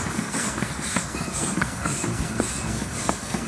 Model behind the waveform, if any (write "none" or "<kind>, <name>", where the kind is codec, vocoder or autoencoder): codec, SNAC